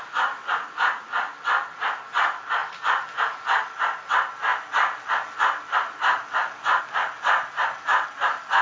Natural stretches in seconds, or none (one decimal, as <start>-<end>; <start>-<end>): 0.0-8.6